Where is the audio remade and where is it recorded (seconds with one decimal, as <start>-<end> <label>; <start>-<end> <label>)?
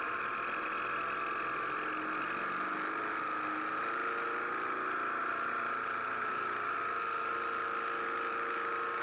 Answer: 0.0-9.0 recorded